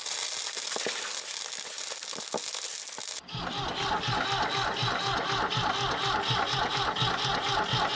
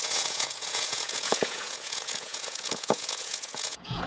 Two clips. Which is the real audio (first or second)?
first